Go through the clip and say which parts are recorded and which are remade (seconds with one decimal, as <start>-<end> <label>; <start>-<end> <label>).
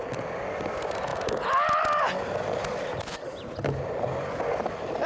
0.0-5.1 recorded